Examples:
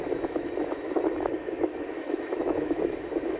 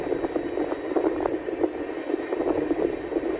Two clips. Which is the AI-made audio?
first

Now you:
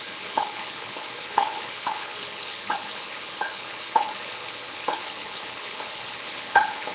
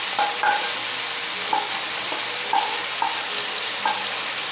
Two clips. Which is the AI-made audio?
first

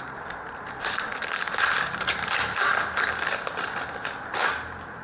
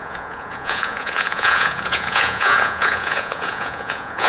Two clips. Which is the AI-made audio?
second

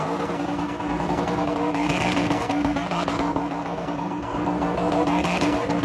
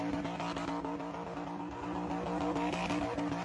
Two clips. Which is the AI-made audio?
first